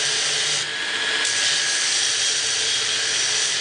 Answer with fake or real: real